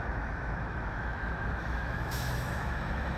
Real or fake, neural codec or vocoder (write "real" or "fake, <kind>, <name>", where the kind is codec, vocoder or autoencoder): fake, autoencoder, DAC-VAE